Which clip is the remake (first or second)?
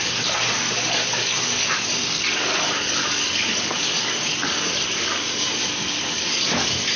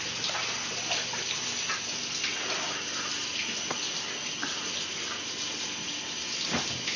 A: first